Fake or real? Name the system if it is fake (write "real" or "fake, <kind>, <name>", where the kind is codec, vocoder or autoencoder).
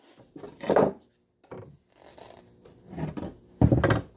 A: real